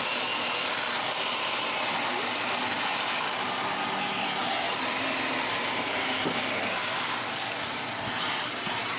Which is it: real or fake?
real